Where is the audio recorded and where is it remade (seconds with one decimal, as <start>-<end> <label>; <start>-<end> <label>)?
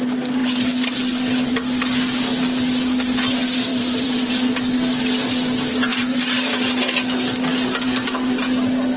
0.0-3.7 recorded; 3.7-4.3 remade; 4.3-5.9 recorded; 5.9-6.5 remade; 6.5-9.0 recorded